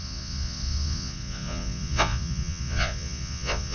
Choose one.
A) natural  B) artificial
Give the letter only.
B